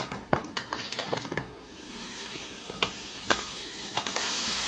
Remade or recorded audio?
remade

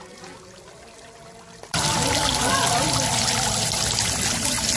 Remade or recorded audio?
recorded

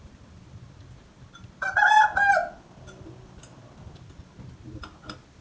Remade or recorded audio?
recorded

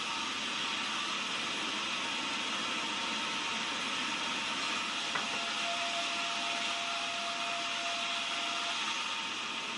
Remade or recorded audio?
recorded